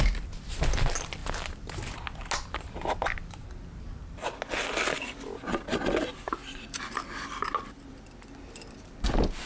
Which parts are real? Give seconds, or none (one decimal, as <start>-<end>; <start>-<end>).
0.0-6.4